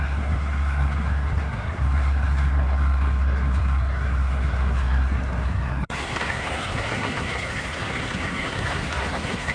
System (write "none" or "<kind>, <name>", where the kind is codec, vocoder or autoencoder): codec, SNAC